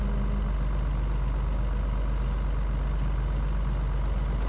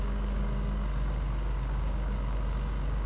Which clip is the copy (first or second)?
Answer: second